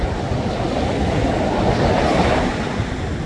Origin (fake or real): real